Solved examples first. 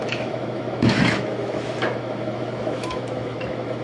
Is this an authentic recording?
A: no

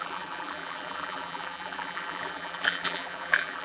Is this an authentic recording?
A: no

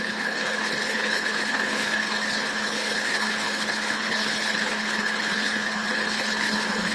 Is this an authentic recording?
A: no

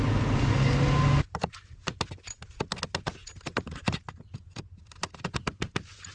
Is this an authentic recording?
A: yes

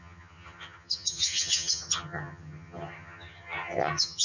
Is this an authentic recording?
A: no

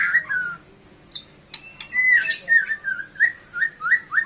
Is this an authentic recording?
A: yes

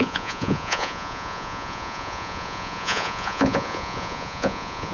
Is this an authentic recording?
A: no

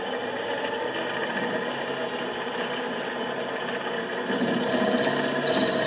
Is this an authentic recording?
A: yes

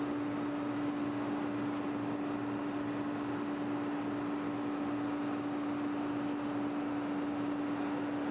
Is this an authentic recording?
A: yes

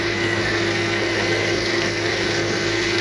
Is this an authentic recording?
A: no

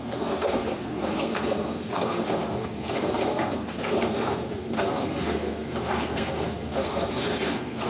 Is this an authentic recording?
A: no